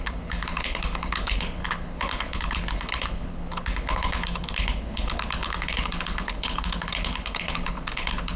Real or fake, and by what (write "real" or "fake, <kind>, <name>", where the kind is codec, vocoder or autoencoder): fake, codec, HILCodec